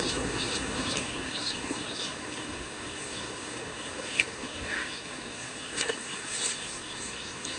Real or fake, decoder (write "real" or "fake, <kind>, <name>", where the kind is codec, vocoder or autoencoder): fake, codec, SNAC